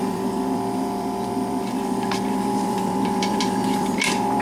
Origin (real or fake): fake